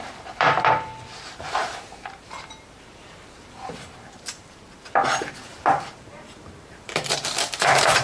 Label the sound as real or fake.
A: fake